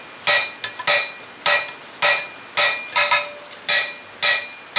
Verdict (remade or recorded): recorded